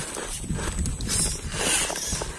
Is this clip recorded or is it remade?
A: recorded